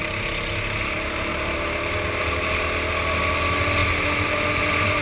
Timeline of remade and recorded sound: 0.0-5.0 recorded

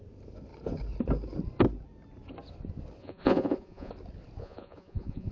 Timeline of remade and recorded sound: 0.0-3.0 recorded; 3.0-3.9 remade; 3.9-4.4 recorded; 4.4-5.3 remade

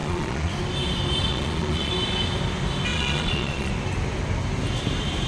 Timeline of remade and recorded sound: 0.0-0.5 remade; 0.5-1.3 recorded; 1.3-1.9 remade; 1.9-2.9 recorded; 2.9-3.7 remade; 3.7-5.3 recorded

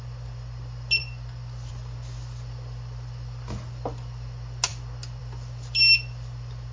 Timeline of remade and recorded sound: 0.0-6.7 recorded